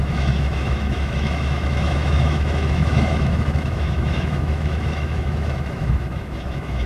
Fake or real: fake